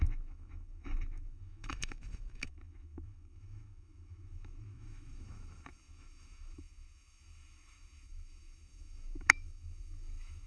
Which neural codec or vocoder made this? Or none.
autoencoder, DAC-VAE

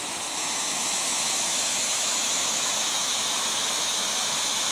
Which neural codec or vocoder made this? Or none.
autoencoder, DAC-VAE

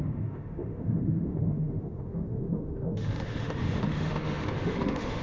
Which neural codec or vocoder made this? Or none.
autoencoder, DAC-VAE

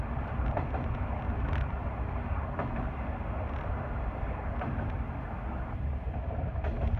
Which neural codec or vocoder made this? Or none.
none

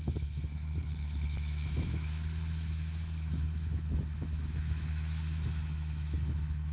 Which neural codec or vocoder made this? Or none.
autoencoder, DAC-VAE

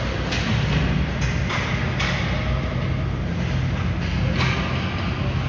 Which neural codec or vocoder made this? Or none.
none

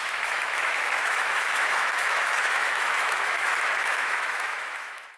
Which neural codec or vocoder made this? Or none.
autoencoder, DAC-VAE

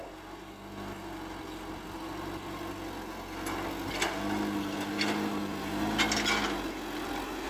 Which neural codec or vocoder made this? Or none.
none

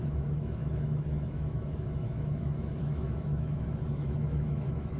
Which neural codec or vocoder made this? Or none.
autoencoder, DAC-VAE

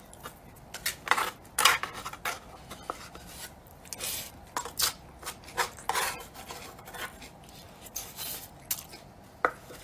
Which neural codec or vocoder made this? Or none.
none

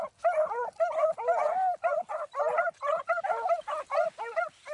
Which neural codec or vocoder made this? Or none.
none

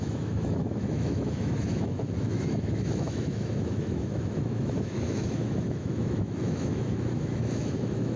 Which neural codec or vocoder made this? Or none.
autoencoder, DAC-VAE